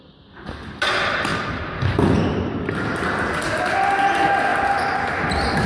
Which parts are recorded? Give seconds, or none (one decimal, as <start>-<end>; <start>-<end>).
0.0-5.7